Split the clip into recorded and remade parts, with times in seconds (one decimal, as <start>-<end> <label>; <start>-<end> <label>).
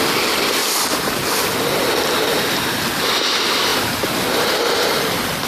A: 0.0-3.7 recorded; 3.7-5.0 remade; 5.0-5.5 recorded